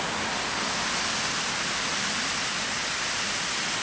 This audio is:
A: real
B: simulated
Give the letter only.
A